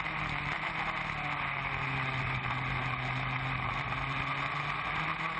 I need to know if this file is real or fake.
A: real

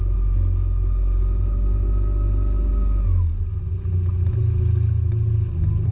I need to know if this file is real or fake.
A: real